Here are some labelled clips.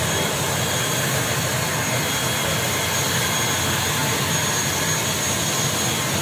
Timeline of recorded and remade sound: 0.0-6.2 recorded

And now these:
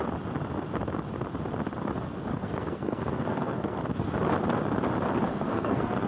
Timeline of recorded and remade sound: 0.0-2.3 recorded; 2.3-3.8 remade; 3.8-5.2 recorded; 5.2-6.1 remade

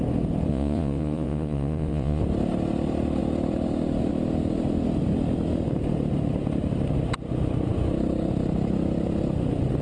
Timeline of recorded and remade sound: 0.0-0.5 recorded; 0.5-2.2 remade; 2.2-9.8 recorded

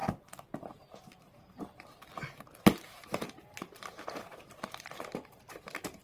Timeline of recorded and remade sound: 0.0-0.8 recorded; 0.8-6.0 remade

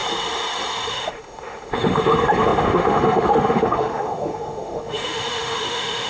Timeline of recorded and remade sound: 0.0-0.9 recorded; 0.9-6.1 remade

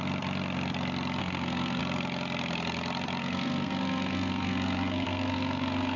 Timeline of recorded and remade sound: 0.0-1.2 recorded; 1.2-1.8 remade; 1.8-3.2 recorded; 3.2-6.0 remade

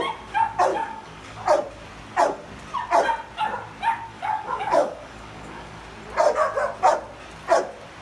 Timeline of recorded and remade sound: 0.0-0.7 recorded; 0.7-1.4 remade; 1.4-4.1 recorded; 4.1-5.8 remade; 5.8-8.0 recorded

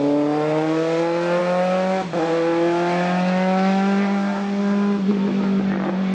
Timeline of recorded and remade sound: 0.0-6.1 recorded